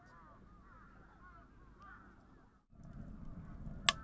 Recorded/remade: recorded